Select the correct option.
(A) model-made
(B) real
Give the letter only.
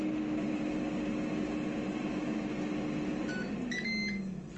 B